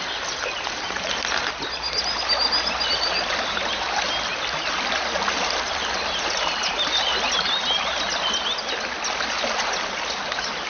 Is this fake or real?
real